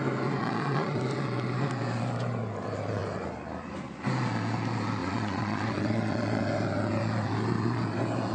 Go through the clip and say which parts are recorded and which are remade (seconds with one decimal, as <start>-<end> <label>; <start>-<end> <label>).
0.0-0.4 recorded; 0.4-1.0 remade; 1.0-5.0 recorded; 5.0-6.4 remade; 6.4-8.3 recorded